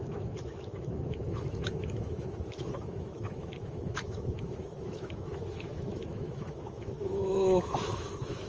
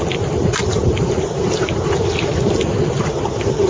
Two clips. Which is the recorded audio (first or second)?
second